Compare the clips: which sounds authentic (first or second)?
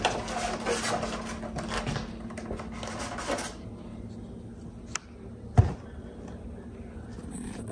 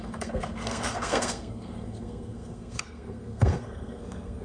first